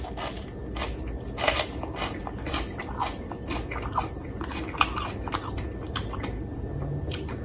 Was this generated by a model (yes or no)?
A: no